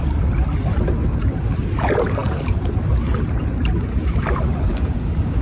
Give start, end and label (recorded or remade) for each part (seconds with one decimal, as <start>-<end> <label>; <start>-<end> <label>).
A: 0.0-4.7 recorded; 4.7-5.4 remade